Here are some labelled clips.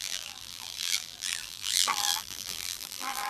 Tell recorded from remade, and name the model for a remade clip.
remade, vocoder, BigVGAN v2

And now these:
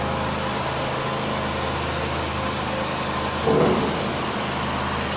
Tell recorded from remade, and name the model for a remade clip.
recorded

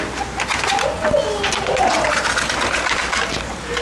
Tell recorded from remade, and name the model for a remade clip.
recorded